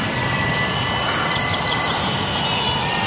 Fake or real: real